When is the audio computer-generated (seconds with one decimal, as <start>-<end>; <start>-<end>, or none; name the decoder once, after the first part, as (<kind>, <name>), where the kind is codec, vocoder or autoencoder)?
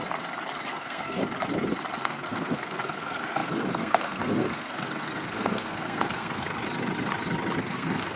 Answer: 0.7-1.2 (codec, SNAC); 2.0-6.5; 7.6-8.2